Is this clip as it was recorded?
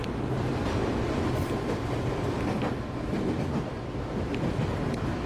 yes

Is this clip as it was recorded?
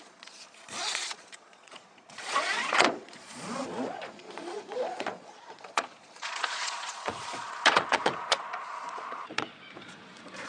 no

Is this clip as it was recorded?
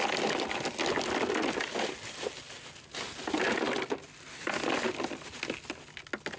yes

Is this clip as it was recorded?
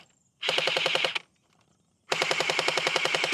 yes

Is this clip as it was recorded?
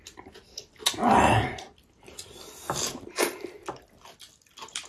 yes